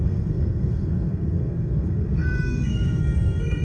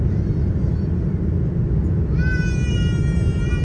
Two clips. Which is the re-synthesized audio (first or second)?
first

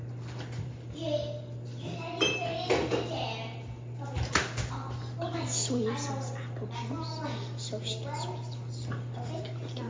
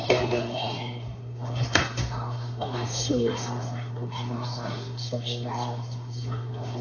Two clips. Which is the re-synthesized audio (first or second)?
second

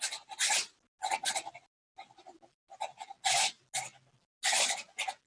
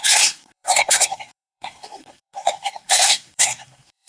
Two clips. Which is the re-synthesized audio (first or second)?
second